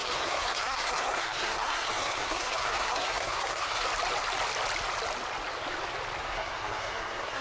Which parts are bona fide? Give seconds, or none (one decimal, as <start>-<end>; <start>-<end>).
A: 3.9-6.2